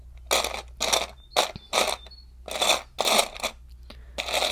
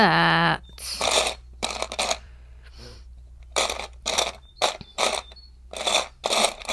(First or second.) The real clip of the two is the first